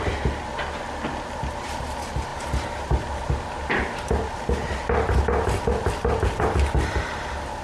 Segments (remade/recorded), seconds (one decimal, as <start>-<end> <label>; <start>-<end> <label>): 0.0-7.6 recorded